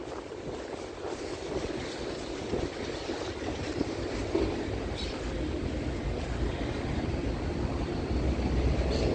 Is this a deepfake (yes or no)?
no